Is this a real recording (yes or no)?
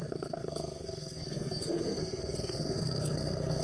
no